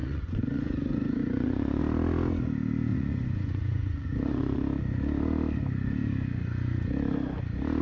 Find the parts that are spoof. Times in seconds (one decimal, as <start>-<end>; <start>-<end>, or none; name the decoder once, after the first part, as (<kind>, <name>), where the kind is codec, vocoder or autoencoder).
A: 0.0-1.8 (vocoder, Vocos); 2.9-4.6